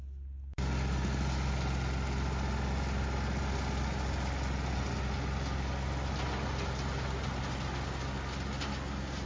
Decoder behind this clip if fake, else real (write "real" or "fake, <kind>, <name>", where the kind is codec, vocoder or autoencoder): real